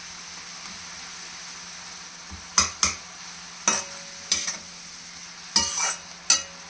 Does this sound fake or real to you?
real